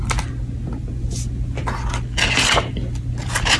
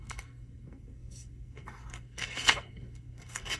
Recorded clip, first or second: first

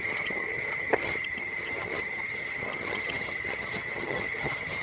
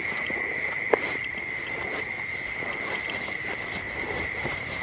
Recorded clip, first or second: second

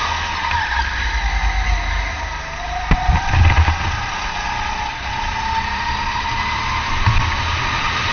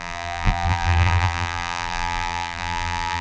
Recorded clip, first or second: first